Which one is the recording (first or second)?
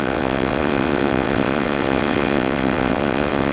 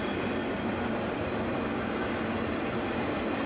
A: second